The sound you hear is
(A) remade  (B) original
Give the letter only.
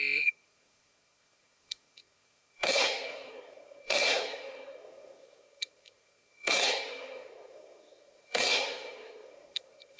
A